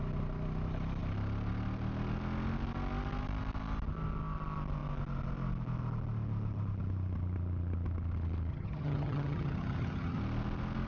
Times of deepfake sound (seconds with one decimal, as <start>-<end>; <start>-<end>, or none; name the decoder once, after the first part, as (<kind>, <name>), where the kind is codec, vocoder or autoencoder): 8.5-10.2 (vocoder, HiFi-GAN)